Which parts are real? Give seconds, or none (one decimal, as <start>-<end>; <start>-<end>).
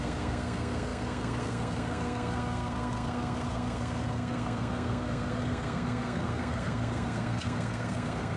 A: none